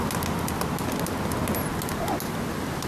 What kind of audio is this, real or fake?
real